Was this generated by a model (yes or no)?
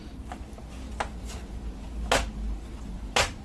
no